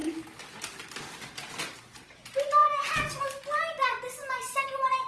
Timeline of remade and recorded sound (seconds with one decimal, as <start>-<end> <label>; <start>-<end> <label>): 0.0-2.6 recorded; 2.6-3.2 remade; 3.2-5.1 recorded